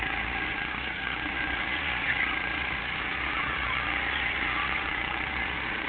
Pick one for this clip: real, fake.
fake